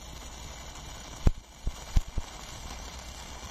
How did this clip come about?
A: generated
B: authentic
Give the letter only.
B